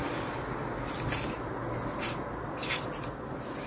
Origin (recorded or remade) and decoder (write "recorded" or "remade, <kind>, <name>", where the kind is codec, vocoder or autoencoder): recorded